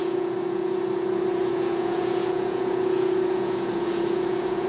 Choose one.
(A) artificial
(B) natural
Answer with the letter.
A